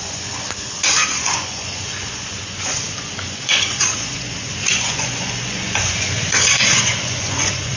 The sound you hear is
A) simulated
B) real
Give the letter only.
A